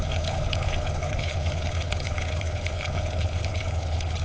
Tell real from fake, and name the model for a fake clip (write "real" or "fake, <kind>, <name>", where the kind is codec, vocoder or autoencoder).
fake, codec, HILCodec